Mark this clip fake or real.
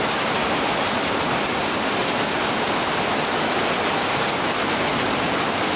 real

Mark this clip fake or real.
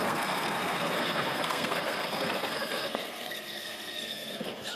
fake